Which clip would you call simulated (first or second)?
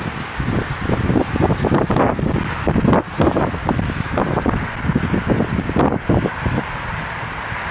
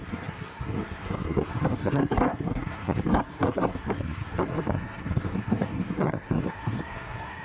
second